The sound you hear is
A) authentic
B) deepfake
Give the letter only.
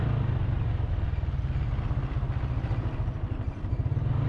A